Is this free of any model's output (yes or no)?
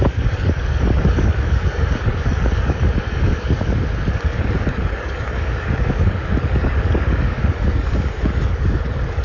no